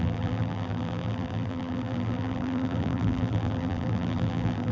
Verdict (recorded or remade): remade